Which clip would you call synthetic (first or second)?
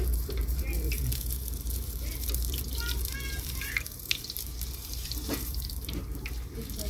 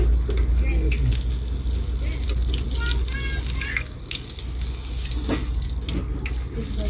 first